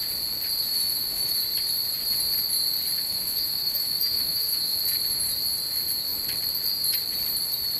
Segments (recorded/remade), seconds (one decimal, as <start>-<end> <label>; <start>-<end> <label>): 0.0-0.6 recorded; 0.6-1.4 remade; 1.4-3.0 recorded; 3.0-4.8 remade; 4.8-7.8 recorded

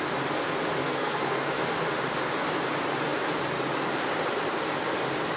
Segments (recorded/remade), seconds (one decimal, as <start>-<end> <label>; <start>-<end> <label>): 0.0-0.8 recorded; 0.8-1.5 remade; 1.5-5.4 recorded

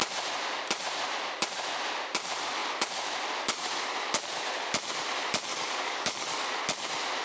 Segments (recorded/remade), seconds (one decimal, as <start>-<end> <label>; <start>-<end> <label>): 0.0-5.5 recorded; 5.5-6.5 remade; 6.5-7.2 recorded